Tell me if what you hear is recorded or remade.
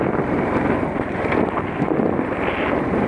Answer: recorded